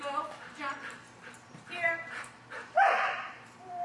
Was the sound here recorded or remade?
remade